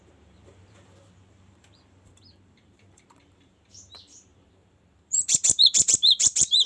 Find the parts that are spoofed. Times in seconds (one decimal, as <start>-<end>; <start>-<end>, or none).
0.0-6.7